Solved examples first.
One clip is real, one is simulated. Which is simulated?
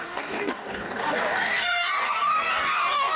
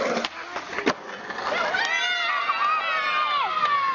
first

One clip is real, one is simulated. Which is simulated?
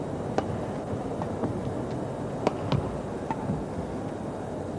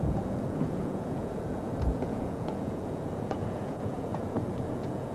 second